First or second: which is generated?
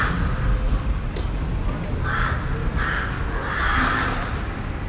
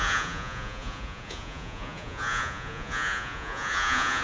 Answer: second